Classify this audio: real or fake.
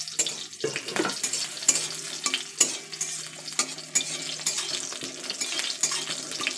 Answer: real